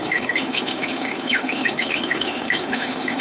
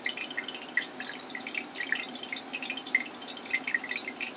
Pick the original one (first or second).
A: second